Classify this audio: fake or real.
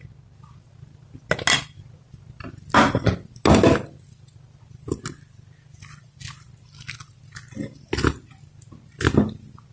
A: real